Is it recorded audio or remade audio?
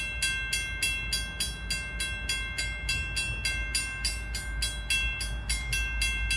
recorded